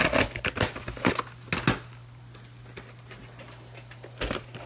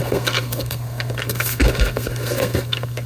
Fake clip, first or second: second